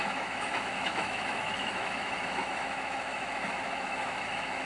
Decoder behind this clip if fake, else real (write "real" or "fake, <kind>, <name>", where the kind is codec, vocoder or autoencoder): fake, autoencoder, DAC-VAE